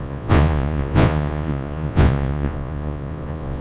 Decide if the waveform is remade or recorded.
remade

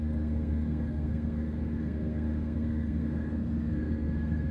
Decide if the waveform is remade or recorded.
remade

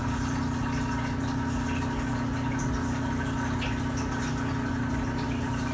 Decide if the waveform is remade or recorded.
recorded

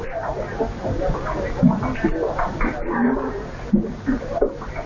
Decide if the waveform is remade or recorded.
recorded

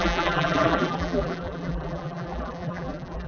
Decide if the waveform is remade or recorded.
remade